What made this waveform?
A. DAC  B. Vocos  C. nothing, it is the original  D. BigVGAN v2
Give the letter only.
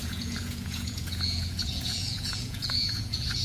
B